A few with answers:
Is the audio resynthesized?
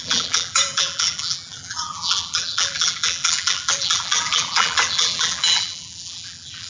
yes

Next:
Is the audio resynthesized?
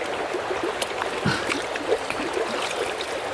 no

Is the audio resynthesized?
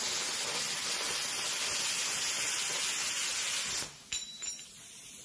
no